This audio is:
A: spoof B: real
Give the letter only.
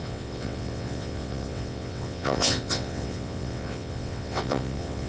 A